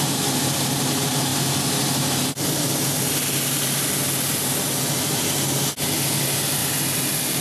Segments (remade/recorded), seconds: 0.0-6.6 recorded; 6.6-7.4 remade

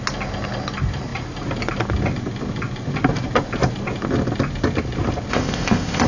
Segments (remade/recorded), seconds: 0.0-5.3 recorded; 5.3-6.1 remade

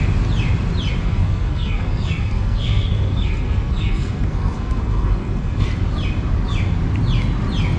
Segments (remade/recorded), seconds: 0.0-1.0 recorded; 1.0-5.7 remade; 5.7-7.8 recorded

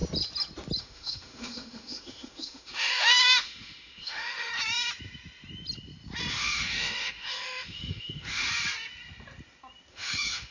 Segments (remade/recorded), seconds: 0.0-0.8 recorded; 0.8-4.5 remade; 4.5-6.3 recorded; 6.3-8.5 remade; 8.5-9.9 recorded; 9.9-10.5 remade